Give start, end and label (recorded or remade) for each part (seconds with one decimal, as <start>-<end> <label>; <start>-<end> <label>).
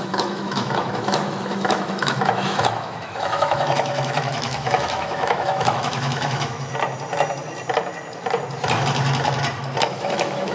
0.0-6.7 remade; 6.7-9.8 recorded; 9.8-10.5 remade